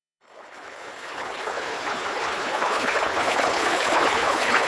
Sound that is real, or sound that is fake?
fake